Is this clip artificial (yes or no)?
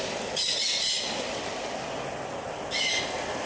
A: no